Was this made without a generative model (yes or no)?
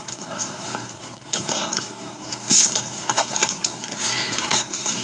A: no